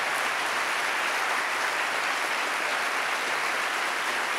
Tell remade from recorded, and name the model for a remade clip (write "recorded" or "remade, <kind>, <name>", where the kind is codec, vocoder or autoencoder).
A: recorded